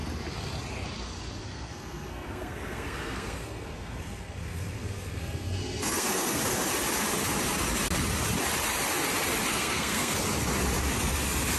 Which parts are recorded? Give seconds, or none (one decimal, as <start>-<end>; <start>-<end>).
0.0-1.4; 6.4-9.5; 10.2-11.6